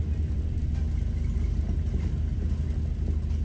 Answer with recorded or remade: recorded